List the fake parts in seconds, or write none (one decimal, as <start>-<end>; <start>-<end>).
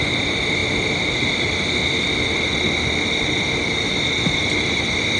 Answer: 0.0-0.6; 3.7-5.2